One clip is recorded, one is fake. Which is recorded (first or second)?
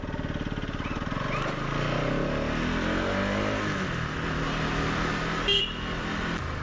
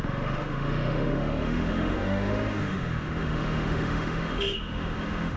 first